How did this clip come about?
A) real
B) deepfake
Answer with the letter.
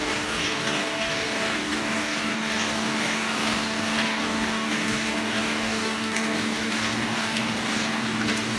B